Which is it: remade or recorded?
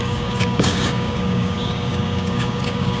remade